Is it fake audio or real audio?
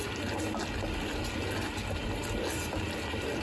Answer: real